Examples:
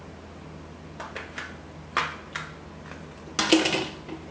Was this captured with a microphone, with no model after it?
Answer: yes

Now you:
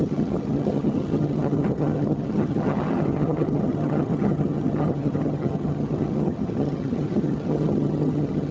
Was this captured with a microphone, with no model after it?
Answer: no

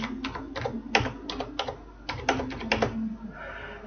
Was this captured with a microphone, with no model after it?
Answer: yes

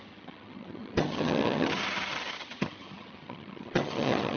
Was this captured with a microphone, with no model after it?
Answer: no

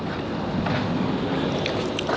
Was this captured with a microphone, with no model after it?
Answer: yes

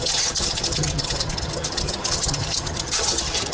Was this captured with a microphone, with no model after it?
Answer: no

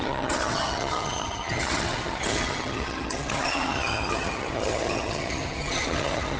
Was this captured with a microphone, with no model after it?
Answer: no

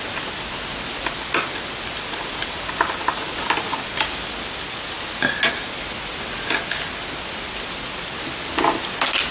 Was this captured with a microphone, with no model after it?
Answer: yes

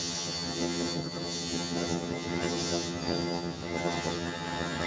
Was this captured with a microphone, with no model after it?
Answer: no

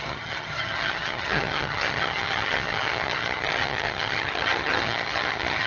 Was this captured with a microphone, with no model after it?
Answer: no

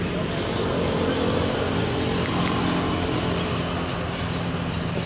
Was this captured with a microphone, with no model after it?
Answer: yes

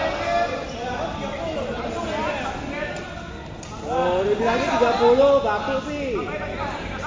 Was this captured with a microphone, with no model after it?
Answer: yes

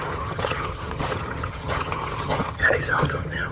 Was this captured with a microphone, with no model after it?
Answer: no